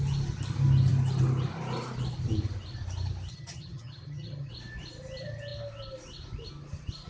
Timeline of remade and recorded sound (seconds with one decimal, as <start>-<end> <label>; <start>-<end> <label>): 0.0-3.3 recorded; 3.3-4.5 remade; 4.5-7.1 recorded

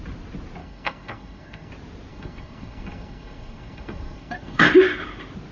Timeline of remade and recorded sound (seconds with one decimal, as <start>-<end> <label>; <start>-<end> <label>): 0.0-0.6 recorded; 0.6-1.7 remade; 1.7-2.1 recorded; 2.1-4.7 remade; 4.7-5.5 recorded

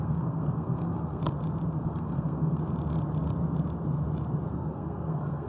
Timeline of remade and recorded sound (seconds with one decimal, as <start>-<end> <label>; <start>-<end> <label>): 0.0-1.2 remade; 1.2-1.8 recorded; 1.8-2.6 remade; 2.6-4.5 recorded; 4.5-5.5 remade